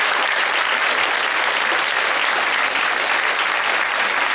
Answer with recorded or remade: recorded